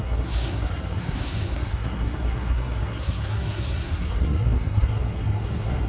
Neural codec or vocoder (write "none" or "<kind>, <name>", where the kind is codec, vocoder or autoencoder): codec, SNAC